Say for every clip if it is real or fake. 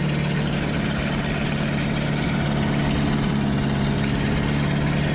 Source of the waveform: real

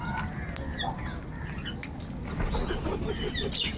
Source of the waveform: real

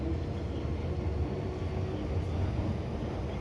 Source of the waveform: real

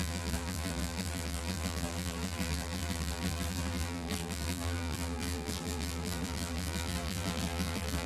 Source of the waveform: fake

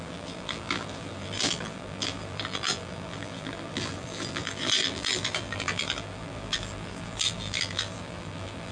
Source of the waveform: fake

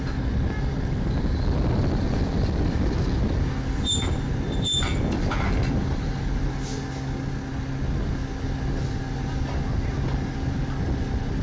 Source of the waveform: real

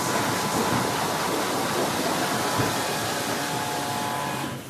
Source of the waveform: real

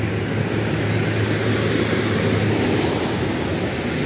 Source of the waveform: real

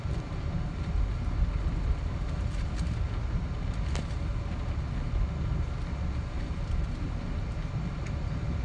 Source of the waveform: real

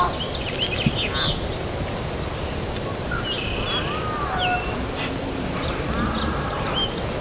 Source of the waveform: real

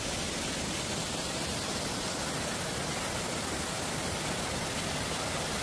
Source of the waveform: real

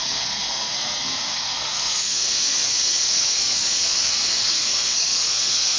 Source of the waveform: fake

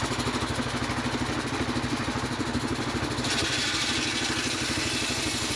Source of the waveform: real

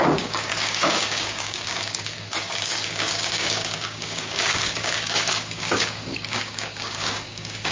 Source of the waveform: fake